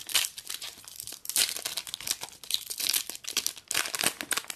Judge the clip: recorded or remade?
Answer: recorded